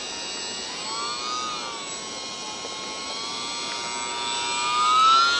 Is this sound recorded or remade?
recorded